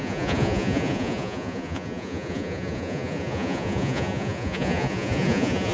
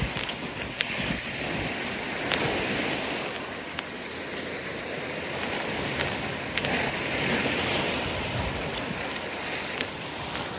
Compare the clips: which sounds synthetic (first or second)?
first